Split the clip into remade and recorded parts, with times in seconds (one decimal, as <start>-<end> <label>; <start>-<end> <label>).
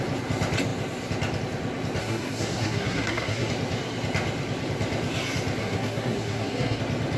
0.0-2.0 recorded; 2.0-3.5 remade; 3.5-5.6 recorded; 5.6-6.8 remade; 6.8-7.2 recorded